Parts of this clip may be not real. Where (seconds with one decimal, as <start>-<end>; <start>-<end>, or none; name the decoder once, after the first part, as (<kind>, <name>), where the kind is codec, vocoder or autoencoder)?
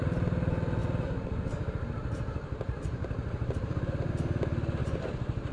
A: 0.8-4.1 (vocoder, BigVGAN v2); 4.8-5.5